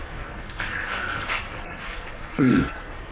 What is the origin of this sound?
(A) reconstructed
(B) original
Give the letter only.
A